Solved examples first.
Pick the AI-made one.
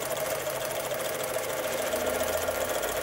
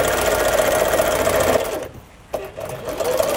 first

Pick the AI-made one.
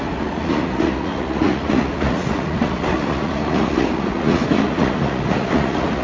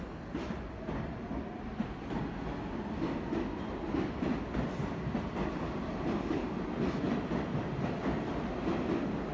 first